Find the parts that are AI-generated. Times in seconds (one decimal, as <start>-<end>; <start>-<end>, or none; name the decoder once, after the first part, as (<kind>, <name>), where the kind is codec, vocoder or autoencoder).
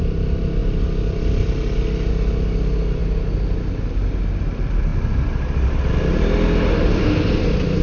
none